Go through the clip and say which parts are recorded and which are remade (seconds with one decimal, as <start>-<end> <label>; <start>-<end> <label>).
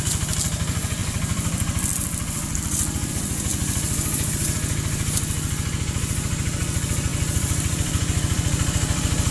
0.0-1.0 recorded; 1.0-3.1 remade; 3.1-7.1 recorded; 7.1-9.3 remade